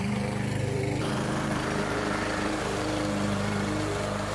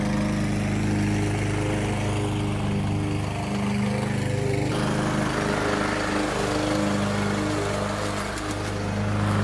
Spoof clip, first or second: first